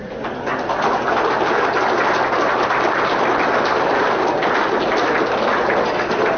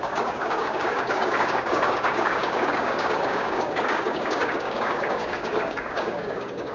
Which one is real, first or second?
first